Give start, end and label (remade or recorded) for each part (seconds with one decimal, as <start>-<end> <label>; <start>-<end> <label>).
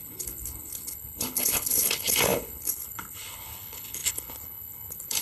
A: 0.0-5.2 remade